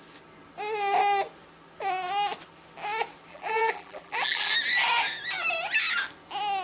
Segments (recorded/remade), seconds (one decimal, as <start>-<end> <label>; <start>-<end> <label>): 0.0-3.3 recorded; 3.3-4.5 remade; 4.5-6.6 recorded